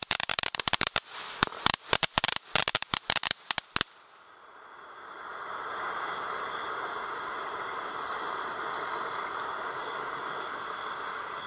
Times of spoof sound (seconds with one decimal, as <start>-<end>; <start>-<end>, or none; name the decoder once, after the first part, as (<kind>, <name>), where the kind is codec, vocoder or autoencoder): 0.0-2.2 (vocoder, BigVGAN v2); 2.6-3.6; 5.3-8.5